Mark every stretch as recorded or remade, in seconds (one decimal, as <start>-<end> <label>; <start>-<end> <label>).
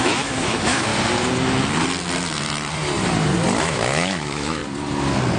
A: 0.0-0.9 remade; 0.9-3.6 recorded; 3.6-4.6 remade; 4.6-5.4 recorded